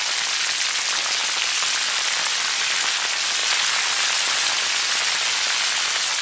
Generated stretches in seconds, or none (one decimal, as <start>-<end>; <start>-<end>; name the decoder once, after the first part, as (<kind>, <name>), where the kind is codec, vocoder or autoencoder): none